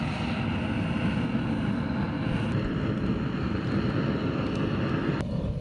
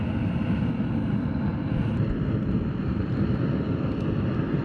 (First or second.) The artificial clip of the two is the second